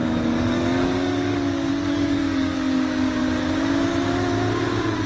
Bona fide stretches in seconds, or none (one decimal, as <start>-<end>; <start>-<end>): 3.2-5.1